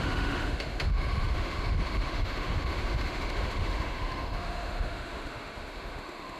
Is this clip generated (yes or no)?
yes